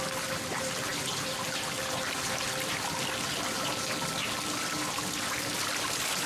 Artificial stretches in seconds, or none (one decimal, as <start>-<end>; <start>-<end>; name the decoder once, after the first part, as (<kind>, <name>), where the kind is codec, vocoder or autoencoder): none